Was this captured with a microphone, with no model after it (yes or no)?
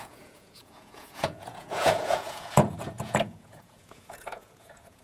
no